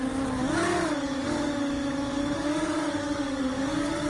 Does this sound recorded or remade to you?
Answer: remade